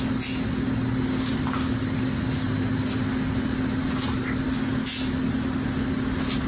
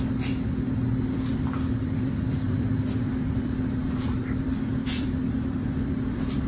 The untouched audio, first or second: first